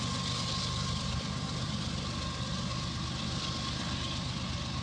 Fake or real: real